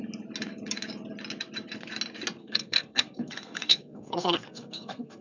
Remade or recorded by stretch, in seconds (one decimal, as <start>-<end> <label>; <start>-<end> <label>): 0.0-2.4 recorded; 2.4-5.2 remade